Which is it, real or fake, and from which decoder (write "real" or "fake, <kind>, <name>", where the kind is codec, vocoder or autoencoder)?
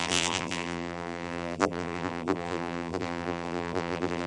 fake, vocoder, BigVGAN v2